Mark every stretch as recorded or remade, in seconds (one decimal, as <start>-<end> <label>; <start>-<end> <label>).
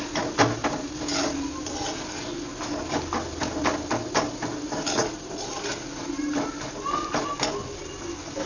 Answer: 0.0-8.5 recorded